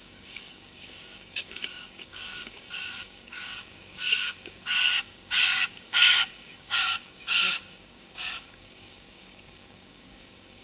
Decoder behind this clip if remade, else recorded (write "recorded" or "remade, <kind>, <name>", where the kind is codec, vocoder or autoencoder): remade, codec, DAC